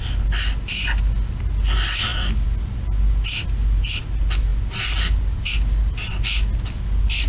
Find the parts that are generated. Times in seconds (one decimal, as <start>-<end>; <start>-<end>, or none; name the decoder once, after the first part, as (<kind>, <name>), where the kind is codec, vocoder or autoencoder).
none